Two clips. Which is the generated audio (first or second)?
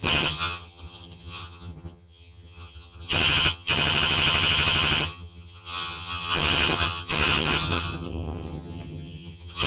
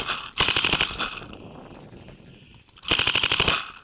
first